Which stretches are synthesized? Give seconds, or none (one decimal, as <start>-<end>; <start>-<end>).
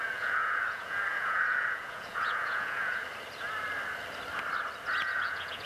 0.0-3.0; 5.0-5.6